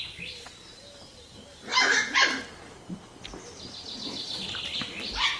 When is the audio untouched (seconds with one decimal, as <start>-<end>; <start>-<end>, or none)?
0.0-5.4